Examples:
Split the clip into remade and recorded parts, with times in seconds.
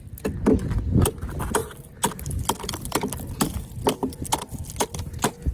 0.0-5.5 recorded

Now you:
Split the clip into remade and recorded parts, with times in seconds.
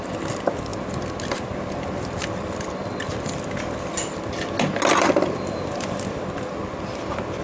0.0-7.4 recorded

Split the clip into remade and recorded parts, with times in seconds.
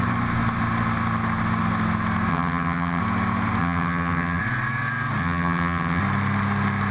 0.0-2.3 recorded; 2.3-3.0 remade; 3.0-3.6 recorded; 3.6-4.4 remade; 4.4-5.2 recorded; 5.2-6.0 remade; 6.0-6.9 recorded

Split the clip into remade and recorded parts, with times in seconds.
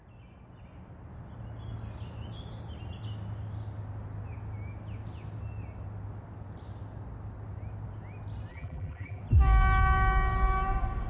0.0-8.5 recorded; 8.5-9.2 remade; 9.2-11.1 recorded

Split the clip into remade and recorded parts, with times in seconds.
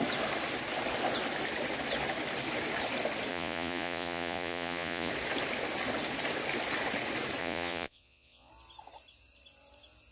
0.0-3.3 recorded; 3.3-5.1 remade; 5.1-7.4 recorded; 7.4-8.5 remade; 8.5-10.1 recorded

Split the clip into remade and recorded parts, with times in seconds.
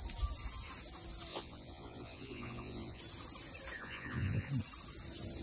0.0-1.3 recorded; 1.3-3.0 remade; 3.0-3.8 recorded; 3.8-4.5 remade; 4.5-5.4 recorded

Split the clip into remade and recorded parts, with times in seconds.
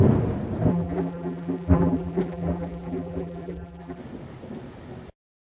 0.0-0.7 recorded; 0.7-4.0 remade; 4.0-5.5 recorded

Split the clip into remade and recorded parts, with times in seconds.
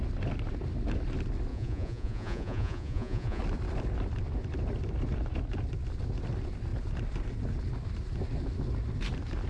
0.0-1.5 recorded; 1.5-3.4 remade; 3.4-9.5 recorded